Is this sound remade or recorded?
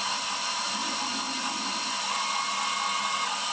recorded